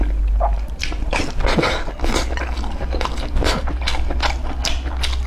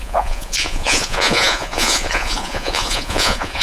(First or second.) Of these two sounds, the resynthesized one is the second